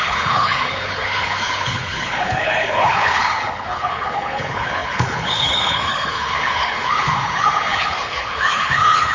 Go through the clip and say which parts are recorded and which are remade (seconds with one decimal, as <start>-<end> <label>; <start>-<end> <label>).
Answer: 0.0-9.1 remade